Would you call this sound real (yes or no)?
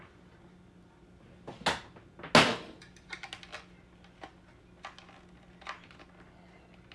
yes